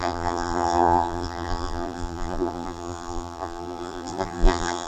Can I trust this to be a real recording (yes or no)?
no